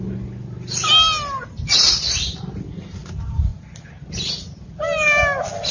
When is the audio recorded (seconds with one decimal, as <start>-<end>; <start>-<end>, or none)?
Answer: 0.0-5.7